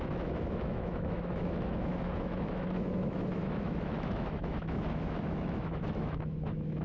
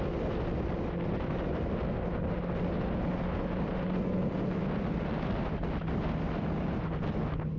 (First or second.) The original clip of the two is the second